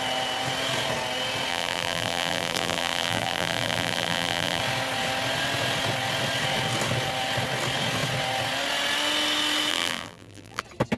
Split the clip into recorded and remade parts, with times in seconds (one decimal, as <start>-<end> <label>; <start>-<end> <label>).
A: 0.0-1.5 recorded; 1.5-4.6 remade; 4.6-9.7 recorded; 9.7-10.6 remade; 10.6-11.0 recorded

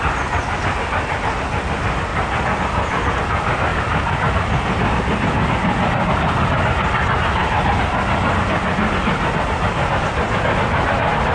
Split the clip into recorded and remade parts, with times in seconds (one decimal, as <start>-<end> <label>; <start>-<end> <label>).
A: 0.0-2.1 recorded; 2.1-3.1 remade; 3.1-3.7 recorded; 3.7-5.1 remade; 5.1-11.3 recorded

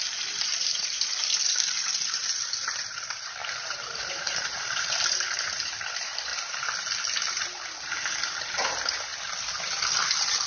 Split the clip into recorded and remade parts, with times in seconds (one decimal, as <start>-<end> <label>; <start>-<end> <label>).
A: 0.0-6.3 remade; 6.3-7.3 recorded; 7.3-9.1 remade; 9.1-9.9 recorded; 9.9-10.5 remade

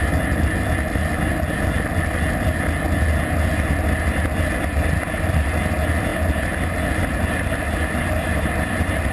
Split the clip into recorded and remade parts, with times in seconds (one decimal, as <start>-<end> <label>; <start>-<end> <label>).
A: 0.0-9.1 recorded

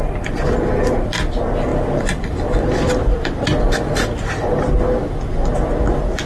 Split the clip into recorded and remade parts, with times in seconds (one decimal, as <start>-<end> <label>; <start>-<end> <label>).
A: 0.0-1.7 recorded; 1.7-4.8 remade; 4.8-6.3 recorded

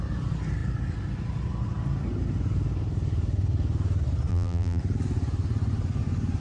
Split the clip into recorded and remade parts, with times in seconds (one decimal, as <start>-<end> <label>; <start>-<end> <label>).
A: 0.0-4.3 recorded; 4.3-4.8 remade; 4.8-6.4 recorded

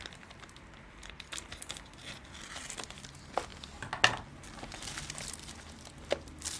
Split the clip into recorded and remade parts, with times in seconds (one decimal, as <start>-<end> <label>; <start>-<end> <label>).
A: 0.0-6.6 recorded

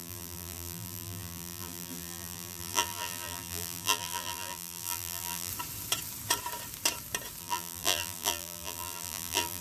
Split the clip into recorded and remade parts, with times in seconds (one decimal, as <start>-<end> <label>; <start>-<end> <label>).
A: 0.0-5.5 remade; 5.5-7.4 recorded; 7.4-9.6 remade